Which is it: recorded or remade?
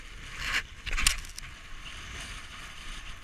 recorded